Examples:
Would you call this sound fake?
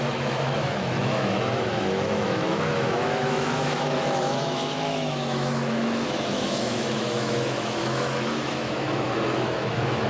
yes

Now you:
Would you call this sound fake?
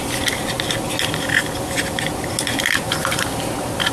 no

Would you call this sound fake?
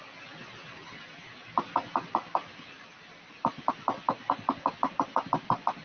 no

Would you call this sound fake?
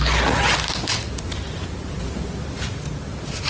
no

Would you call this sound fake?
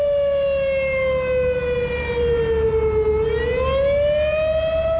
no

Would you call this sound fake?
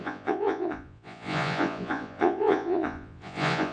yes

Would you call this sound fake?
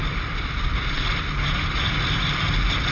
no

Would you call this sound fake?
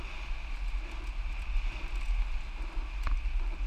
no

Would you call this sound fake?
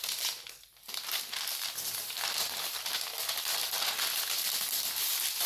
no